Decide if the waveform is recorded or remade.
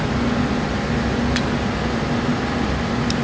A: recorded